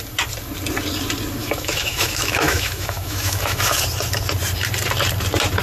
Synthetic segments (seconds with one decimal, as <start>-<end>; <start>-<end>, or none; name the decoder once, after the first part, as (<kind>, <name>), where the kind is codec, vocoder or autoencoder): 1.4-3.8 (autoencoder, DAC-VAE)